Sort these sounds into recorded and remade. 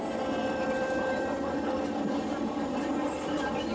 recorded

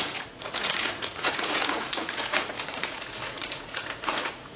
remade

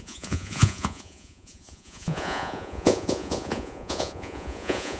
remade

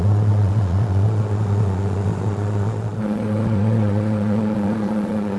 remade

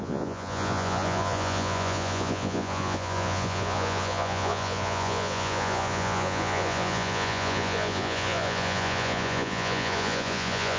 remade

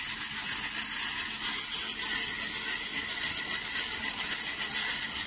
recorded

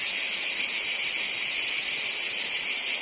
recorded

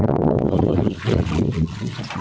remade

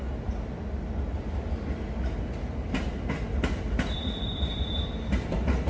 recorded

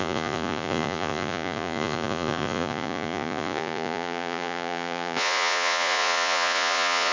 remade